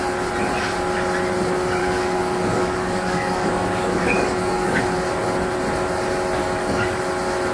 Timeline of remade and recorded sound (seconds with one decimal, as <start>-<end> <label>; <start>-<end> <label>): 0.0-1.8 recorded; 1.8-4.8 remade; 4.8-6.4 recorded; 6.4-7.0 remade; 7.0-7.5 recorded